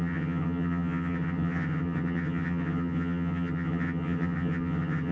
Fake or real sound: fake